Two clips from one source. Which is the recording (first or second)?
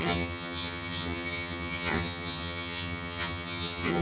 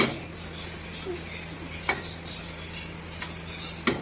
second